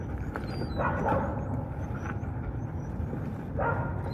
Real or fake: real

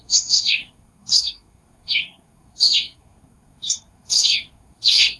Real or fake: fake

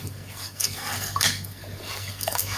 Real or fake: fake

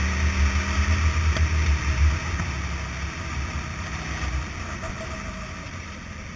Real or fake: real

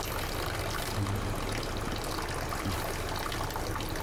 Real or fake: real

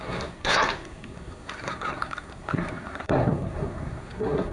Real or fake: fake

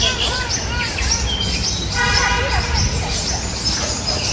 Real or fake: real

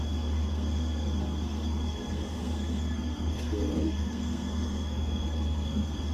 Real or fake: fake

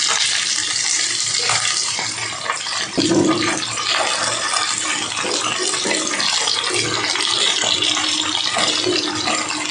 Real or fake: real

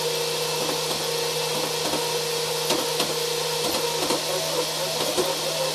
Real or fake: real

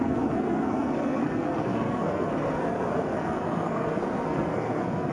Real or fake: fake